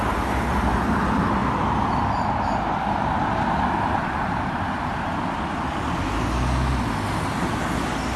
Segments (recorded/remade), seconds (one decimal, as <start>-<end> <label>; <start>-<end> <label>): 0.0-8.2 recorded